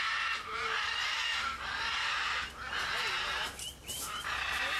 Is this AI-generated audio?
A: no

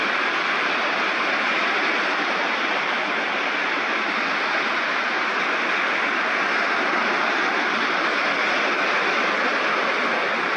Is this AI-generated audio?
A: no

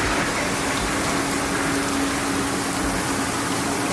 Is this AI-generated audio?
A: no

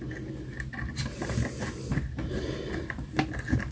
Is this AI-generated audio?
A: no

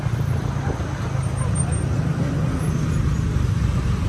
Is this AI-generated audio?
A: no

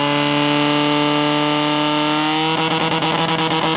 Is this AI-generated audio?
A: no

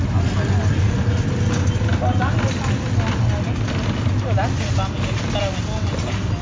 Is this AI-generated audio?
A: no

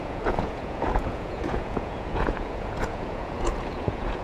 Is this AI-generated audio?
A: yes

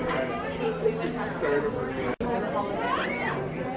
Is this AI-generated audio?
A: no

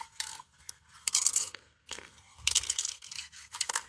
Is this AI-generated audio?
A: yes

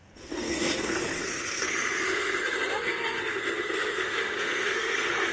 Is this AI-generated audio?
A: yes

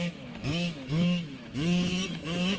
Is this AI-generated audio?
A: yes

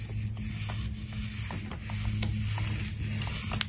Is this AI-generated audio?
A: no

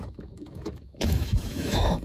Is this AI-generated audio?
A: yes